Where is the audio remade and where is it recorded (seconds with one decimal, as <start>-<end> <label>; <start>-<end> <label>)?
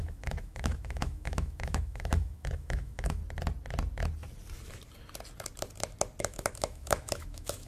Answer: 0.0-3.2 remade; 3.2-6.2 recorded; 6.2-7.7 remade